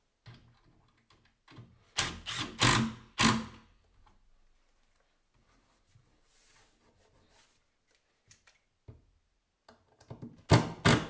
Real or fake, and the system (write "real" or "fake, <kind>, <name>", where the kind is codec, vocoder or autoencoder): real